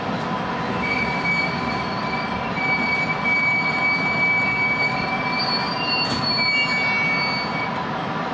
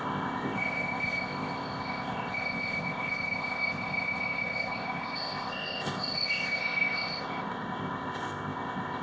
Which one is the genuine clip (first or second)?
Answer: first